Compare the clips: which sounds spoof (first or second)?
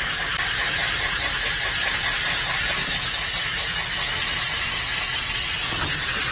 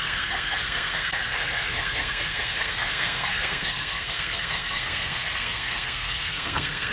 second